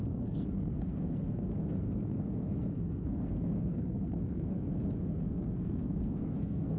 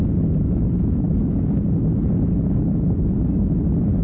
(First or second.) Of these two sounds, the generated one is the first